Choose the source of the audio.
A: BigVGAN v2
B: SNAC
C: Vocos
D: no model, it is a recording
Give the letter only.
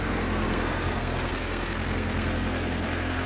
B